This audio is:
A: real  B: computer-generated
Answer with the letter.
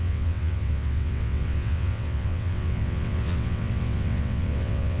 B